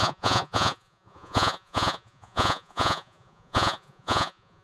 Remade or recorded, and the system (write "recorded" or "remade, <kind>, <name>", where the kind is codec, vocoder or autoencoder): remade, vocoder, Vocos